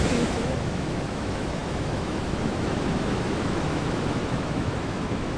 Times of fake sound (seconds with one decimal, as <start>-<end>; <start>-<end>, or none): 0.0-5.4